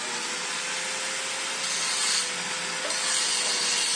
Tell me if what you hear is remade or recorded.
recorded